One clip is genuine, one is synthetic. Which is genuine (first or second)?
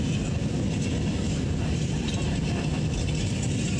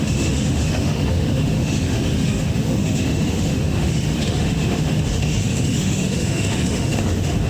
first